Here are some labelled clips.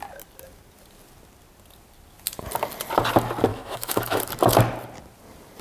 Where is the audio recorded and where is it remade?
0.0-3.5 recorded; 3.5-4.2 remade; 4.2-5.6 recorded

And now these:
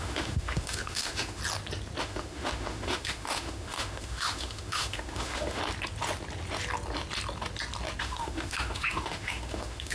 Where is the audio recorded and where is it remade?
0.0-1.4 remade; 1.4-2.0 recorded; 2.0-5.6 remade; 5.6-8.0 recorded; 8.0-9.9 remade

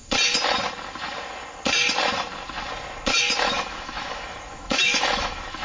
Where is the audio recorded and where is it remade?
0.0-3.4 recorded; 3.4-5.6 remade

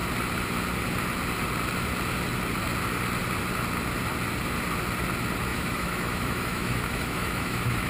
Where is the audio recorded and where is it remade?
0.0-5.5 recorded; 5.5-7.9 remade

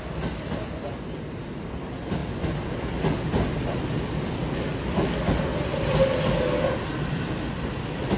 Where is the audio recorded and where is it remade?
0.0-8.2 recorded

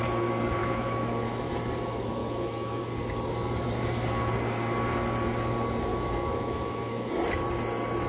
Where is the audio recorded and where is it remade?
0.0-0.6 recorded; 0.6-1.5 remade; 1.5-2.2 recorded; 2.2-2.8 remade; 2.8-5.9 recorded; 5.9-7.1 remade; 7.1-8.1 recorded